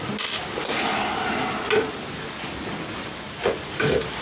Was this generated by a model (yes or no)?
no